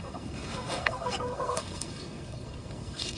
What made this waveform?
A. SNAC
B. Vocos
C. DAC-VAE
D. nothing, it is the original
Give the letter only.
A